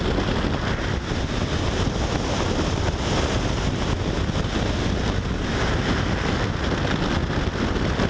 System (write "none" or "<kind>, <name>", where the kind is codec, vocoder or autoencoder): none